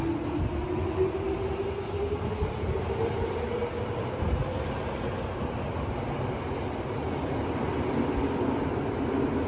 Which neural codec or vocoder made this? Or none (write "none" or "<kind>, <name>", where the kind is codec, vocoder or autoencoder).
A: none